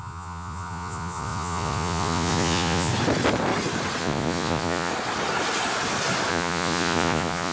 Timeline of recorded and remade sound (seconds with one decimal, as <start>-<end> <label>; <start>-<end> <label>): 0.0-2.9 remade; 2.9-4.0 recorded; 4.0-4.9 remade; 4.9-6.3 recorded; 6.3-7.5 remade